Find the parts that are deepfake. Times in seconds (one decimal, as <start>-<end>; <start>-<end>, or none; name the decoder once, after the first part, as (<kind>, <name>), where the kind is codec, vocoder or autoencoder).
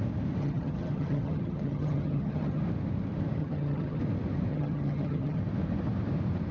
0.4-2.6 (vocoder, HiFi-GAN); 3.4-4.0; 4.5-5.4